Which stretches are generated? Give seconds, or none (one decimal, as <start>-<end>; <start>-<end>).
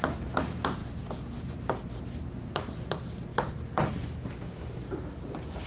none